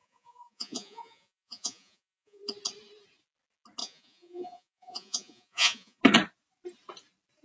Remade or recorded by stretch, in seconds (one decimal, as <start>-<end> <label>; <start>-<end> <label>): 0.0-2.4 remade; 2.4-3.8 recorded; 3.8-6.0 remade; 6.0-7.4 recorded